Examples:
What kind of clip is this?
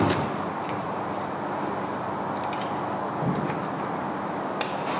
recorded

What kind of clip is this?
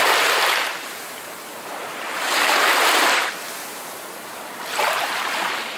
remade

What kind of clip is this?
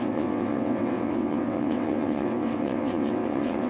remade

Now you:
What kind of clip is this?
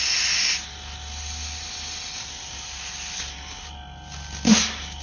recorded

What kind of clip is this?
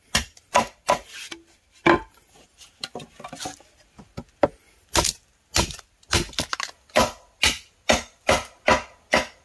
recorded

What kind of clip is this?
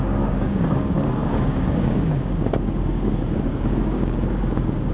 remade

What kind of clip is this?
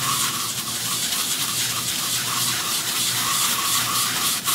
remade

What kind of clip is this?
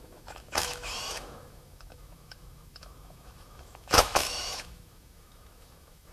remade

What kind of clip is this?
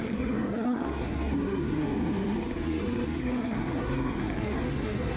remade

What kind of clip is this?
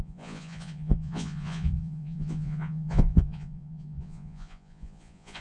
remade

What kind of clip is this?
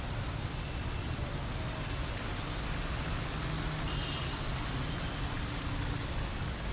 recorded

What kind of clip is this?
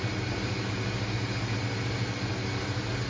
recorded